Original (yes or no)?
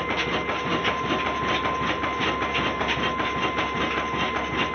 yes